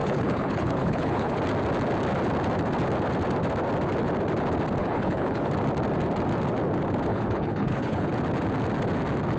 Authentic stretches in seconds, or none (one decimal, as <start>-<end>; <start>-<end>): 1.4-4.8; 5.5-7.1; 8.1-9.4